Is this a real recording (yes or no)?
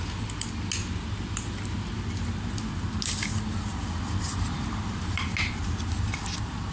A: yes